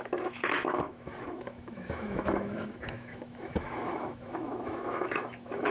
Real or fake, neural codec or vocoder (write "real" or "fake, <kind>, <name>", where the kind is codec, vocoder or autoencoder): fake, autoencoder, DAC-VAE